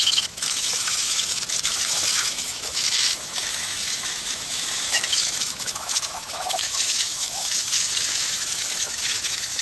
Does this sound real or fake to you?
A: fake